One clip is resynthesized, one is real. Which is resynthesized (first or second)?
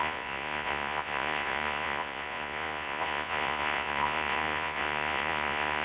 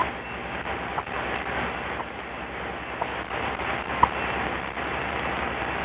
first